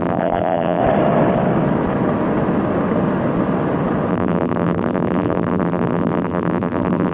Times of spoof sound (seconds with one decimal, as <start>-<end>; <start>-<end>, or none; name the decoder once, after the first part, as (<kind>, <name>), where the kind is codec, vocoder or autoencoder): 0.0-0.8 (vocoder, BigVGAN v2); 4.1-7.1